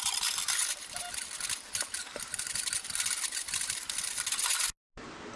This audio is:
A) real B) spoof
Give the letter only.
A